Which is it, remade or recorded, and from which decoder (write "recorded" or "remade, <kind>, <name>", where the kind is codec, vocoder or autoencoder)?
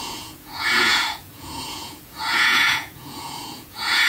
remade, vocoder, Vocos